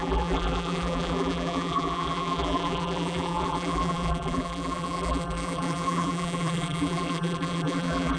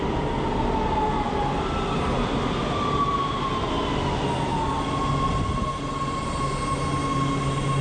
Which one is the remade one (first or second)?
first